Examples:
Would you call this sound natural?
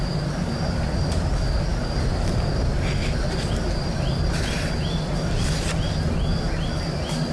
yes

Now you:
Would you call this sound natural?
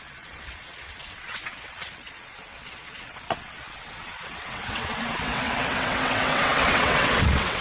no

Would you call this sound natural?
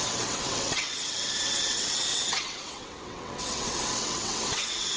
no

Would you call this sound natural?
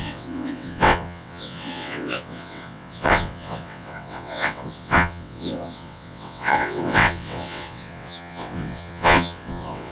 no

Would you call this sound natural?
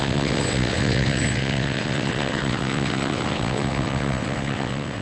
no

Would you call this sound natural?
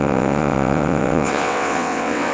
no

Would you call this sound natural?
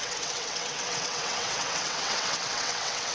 no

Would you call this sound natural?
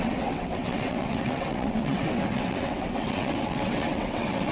no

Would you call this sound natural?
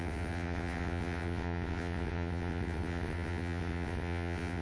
no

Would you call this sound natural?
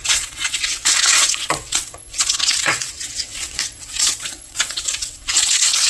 no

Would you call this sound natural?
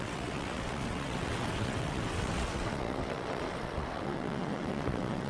no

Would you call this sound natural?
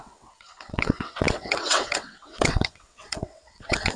no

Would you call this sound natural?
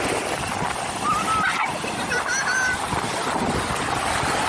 yes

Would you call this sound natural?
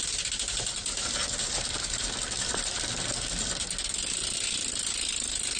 yes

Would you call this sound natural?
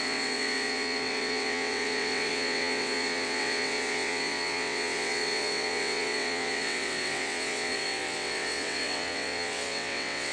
no